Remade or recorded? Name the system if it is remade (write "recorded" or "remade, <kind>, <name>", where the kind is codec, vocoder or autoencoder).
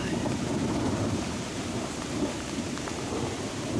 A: remade, vocoder, BigVGAN v2